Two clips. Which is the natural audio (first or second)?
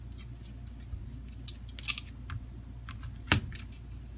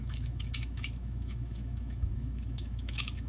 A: first